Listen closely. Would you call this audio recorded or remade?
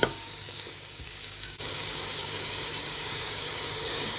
remade